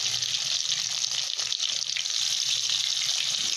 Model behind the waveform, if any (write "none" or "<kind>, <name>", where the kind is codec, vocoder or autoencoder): none